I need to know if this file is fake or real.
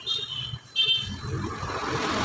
real